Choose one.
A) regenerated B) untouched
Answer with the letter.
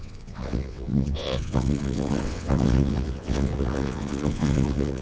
A